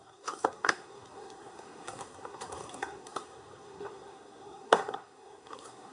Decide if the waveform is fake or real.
fake